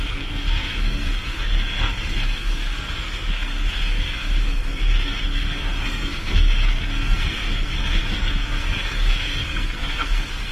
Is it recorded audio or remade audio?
remade